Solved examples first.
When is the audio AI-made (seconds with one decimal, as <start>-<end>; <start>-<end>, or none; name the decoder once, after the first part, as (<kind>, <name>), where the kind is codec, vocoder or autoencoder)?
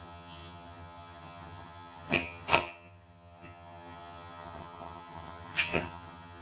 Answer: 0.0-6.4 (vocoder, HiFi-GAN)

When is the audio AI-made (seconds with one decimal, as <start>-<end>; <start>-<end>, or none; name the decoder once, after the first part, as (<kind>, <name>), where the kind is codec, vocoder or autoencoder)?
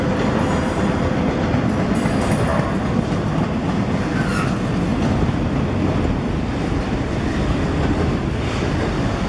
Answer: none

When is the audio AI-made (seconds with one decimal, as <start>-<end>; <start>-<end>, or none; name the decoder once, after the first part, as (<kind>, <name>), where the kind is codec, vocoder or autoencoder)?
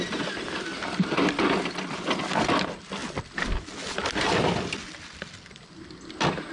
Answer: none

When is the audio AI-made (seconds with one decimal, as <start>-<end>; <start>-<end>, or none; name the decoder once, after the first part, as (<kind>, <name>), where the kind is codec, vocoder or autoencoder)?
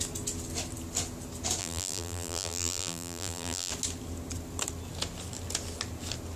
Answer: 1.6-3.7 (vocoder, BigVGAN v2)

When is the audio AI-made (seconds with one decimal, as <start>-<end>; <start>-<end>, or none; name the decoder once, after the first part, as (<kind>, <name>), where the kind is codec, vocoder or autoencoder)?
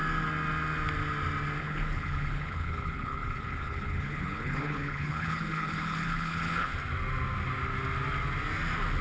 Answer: 1.6-6.7 (codec, HILCodec)